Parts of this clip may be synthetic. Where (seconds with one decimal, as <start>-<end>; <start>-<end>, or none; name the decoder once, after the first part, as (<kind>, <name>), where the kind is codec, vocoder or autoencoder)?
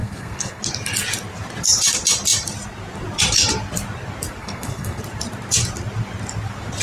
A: 0.0-0.6 (codec, SNAC); 4.4-5.0